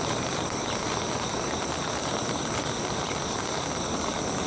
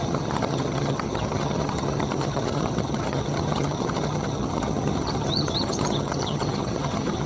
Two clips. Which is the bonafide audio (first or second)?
first